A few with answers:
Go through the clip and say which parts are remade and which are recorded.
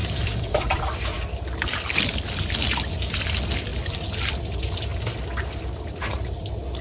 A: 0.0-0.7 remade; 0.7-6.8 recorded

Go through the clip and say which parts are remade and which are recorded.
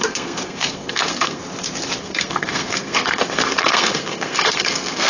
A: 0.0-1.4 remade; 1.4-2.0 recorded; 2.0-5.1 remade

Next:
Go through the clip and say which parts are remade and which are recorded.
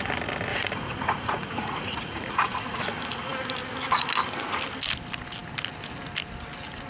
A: 0.0-0.5 recorded; 0.5-2.8 remade; 2.8-6.9 recorded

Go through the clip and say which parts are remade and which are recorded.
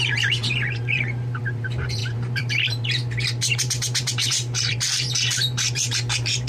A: 0.0-6.5 remade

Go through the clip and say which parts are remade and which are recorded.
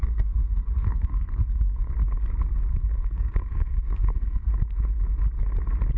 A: 0.0-1.9 remade; 1.9-2.7 recorded; 2.7-4.5 remade; 4.5-6.0 recorded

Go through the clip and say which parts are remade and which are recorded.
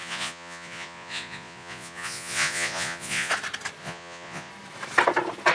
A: 0.0-3.3 remade; 3.3-3.8 recorded; 3.8-4.5 remade; 4.5-5.5 recorded